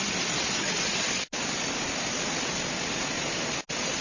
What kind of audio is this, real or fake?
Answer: real